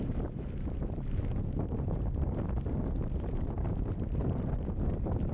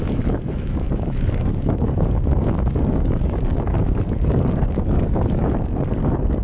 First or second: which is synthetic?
second